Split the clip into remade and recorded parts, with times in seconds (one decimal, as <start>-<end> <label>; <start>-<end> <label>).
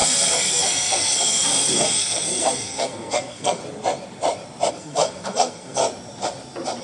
0.0-3.6 remade; 3.6-4.7 recorded; 4.7-5.8 remade; 5.8-6.8 recorded